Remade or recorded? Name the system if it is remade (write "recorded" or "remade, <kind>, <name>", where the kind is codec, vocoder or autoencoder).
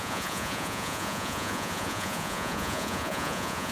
remade, vocoder, Vocos